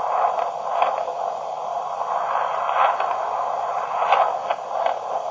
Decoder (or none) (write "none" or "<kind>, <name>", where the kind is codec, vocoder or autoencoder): none